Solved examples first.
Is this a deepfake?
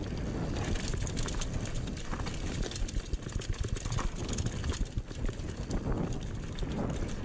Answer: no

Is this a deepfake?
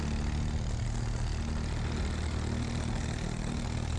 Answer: no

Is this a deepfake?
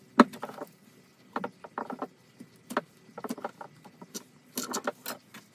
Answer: no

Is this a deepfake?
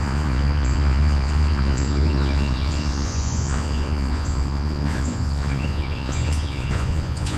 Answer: yes